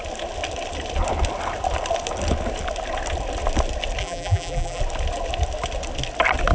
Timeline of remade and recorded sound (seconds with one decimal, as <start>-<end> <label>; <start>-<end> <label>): 0.0-4.0 recorded; 4.0-4.8 remade; 4.8-6.5 recorded